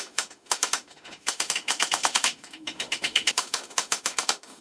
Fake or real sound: fake